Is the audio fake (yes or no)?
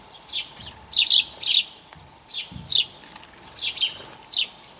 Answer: no